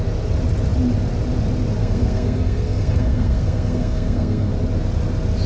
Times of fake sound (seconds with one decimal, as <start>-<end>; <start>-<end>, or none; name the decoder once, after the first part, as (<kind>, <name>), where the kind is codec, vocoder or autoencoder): 1.8-4.5 (codec, SNAC)